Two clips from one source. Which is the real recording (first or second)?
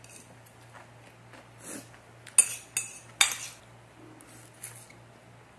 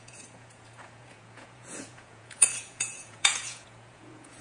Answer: first